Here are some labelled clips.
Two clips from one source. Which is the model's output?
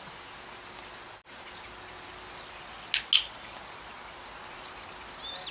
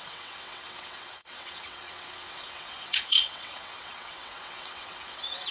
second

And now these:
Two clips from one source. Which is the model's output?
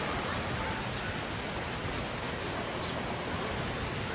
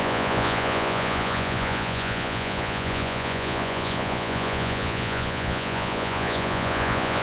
second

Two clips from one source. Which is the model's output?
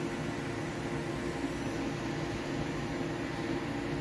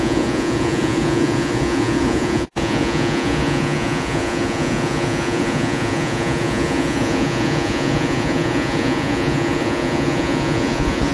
second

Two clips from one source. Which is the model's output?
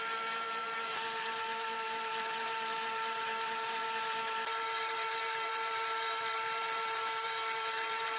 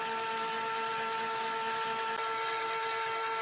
first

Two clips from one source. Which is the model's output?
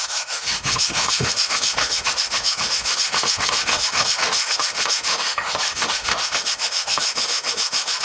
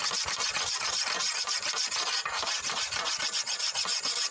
first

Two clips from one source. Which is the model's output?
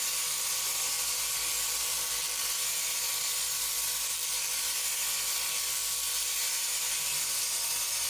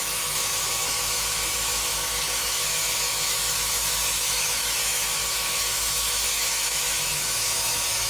second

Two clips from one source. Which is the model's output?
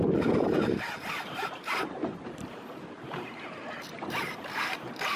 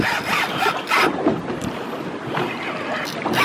first